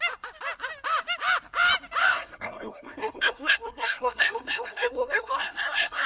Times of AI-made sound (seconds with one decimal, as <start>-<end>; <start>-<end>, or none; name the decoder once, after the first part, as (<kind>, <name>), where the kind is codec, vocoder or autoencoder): 2.0-6.1 (codec, SNAC)